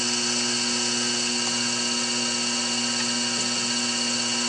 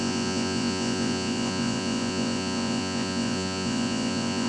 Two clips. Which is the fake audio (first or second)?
second